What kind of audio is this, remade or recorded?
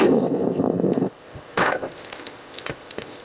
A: remade